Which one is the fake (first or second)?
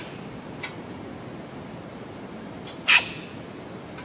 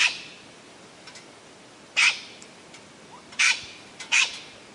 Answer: second